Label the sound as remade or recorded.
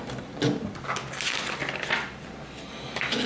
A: recorded